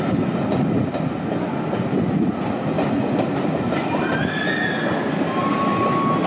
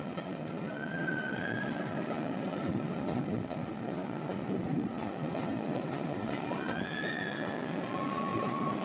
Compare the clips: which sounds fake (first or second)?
second